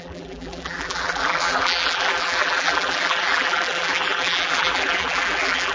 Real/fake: fake